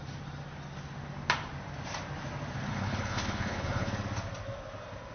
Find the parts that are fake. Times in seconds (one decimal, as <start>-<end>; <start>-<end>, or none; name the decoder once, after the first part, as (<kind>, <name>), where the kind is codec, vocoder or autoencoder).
2.7-3.9 (codec, HILCodec)